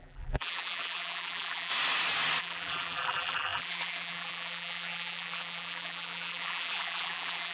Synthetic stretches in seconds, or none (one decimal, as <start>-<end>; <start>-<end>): 0.0-1.7; 2.4-7.5